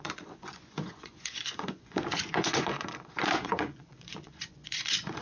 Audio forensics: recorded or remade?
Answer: remade